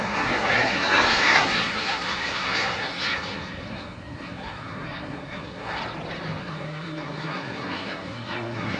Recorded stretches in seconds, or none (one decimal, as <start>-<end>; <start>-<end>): 5.8-6.4